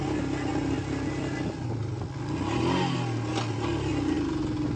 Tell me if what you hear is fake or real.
real